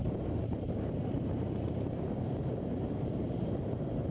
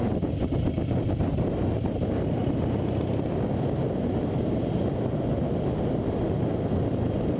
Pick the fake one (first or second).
first